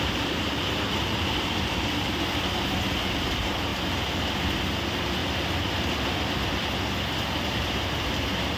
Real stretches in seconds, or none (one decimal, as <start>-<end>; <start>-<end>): 3.7-4.8; 5.2-7.6